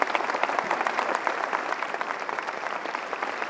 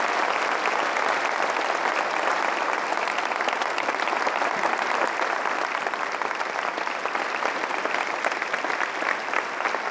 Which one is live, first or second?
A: second